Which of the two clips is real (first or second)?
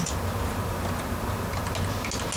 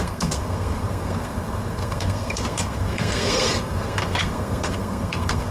first